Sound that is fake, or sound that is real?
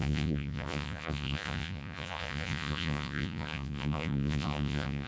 fake